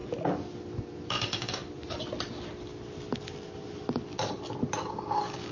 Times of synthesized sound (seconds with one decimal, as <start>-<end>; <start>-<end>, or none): 1.1-1.6; 4.9-5.5